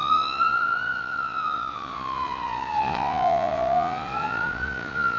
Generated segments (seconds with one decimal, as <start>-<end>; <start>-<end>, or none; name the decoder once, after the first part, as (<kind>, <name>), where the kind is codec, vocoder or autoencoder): 0.0-5.2 (vocoder, Vocos)